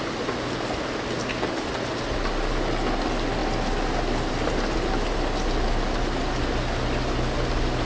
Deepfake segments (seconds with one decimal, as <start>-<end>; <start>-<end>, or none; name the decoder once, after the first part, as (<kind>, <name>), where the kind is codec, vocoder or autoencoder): none